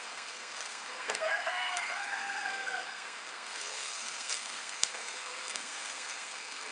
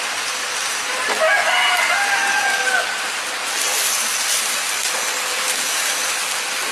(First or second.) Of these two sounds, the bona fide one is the second